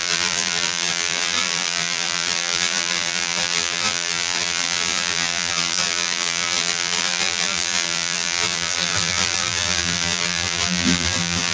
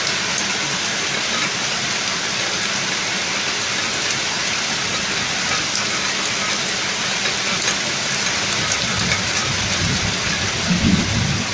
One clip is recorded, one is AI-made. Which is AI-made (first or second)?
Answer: first